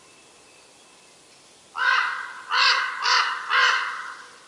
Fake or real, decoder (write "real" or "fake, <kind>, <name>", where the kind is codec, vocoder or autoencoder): real